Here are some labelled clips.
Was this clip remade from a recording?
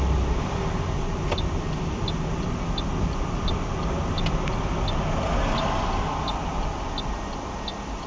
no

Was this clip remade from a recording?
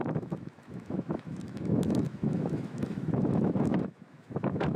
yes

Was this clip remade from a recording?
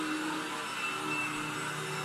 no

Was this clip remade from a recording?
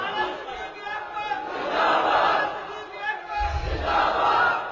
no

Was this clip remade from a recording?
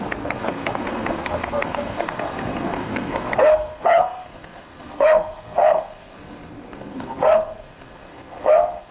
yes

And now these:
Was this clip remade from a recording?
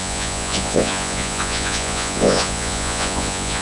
yes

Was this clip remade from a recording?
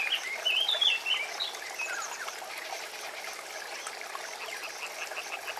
no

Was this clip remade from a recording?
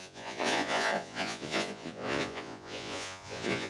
yes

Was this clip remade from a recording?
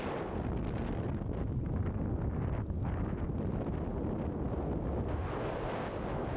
no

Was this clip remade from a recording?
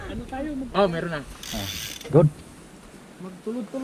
no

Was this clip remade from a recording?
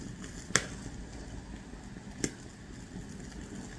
no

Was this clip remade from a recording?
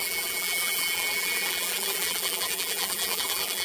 yes